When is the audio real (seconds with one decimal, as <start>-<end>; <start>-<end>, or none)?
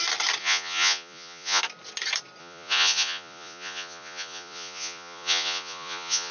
0.0-0.4; 1.6-2.4